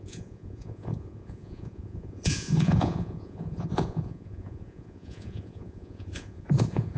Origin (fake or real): fake